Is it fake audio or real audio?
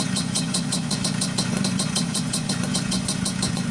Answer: fake